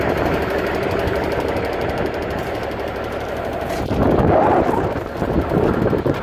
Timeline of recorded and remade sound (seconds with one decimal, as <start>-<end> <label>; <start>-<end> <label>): 0.0-4.0 recorded; 4.0-5.7 remade; 5.7-6.2 recorded